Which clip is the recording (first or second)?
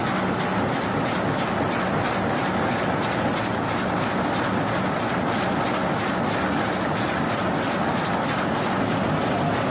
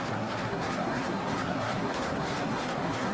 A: first